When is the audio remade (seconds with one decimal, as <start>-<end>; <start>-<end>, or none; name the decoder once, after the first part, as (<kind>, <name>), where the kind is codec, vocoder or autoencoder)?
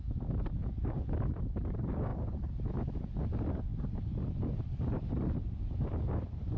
none